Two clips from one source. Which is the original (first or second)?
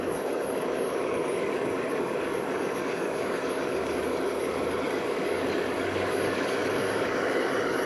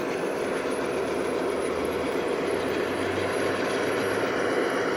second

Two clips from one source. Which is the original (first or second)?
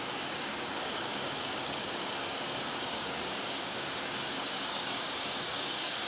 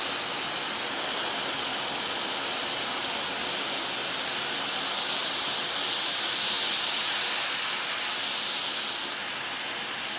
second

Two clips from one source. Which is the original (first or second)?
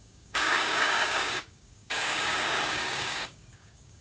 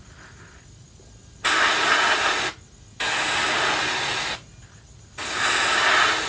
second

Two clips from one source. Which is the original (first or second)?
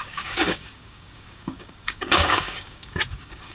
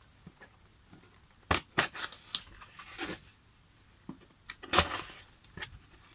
second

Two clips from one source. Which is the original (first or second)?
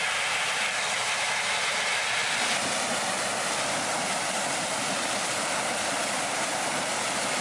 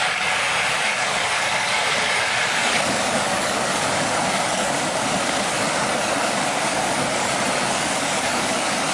first